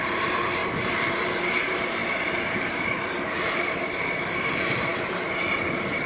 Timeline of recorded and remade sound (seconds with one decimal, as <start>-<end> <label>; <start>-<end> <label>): 0.0-6.1 remade

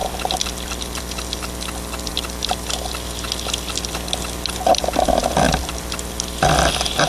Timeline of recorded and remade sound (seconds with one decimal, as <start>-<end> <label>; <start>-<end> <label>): 0.0-7.1 recorded

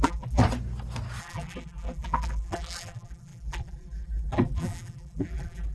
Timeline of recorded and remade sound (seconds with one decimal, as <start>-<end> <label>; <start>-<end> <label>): 0.0-0.4 remade; 0.4-1.2 recorded; 1.2-5.7 remade

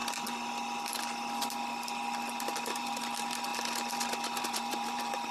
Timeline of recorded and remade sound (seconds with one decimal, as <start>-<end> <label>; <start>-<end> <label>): 0.0-2.7 recorded; 2.7-3.5 remade; 3.5-4.4 recorded; 4.4-5.3 remade

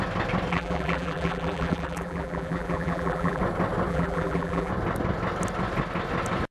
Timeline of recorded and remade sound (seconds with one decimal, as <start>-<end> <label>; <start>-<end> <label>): 0.0-0.5 recorded; 0.5-3.4 remade; 3.4-3.9 recorded; 3.9-4.7 remade; 4.7-6.5 recorded

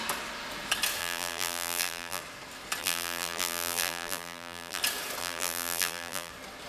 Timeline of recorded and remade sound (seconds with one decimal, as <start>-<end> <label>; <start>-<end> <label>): 0.0-1.0 recorded; 1.0-2.2 remade; 2.2-2.8 recorded; 2.8-4.8 remade; 4.8-5.2 recorded; 5.2-6.3 remade; 6.3-6.7 recorded

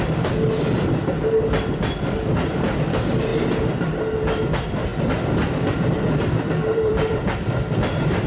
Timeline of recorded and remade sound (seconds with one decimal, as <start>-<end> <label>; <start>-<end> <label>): 0.0-3.3 remade; 3.3-4.5 recorded; 4.5-8.3 remade

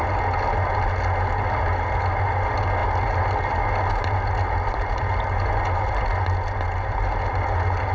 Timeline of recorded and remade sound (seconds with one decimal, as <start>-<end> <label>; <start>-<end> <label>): 0.0-7.9 recorded